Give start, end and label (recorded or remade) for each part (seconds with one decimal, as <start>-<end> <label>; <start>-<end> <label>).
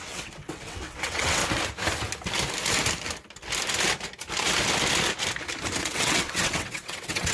0.0-1.4 remade; 1.4-5.8 recorded; 5.8-7.3 remade